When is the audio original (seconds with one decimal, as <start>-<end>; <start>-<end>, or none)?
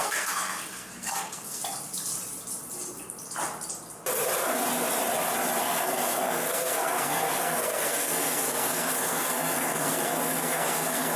1.6-5.6